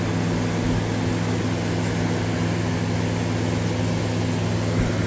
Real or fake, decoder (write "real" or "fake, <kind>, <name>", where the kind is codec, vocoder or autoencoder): real